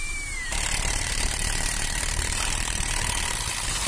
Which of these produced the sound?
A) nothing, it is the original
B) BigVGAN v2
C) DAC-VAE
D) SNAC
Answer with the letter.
B